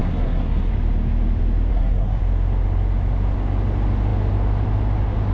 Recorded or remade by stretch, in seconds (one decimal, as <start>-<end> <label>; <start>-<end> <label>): 0.0-0.7 remade; 0.7-1.7 recorded; 1.7-2.2 remade; 2.2-5.3 recorded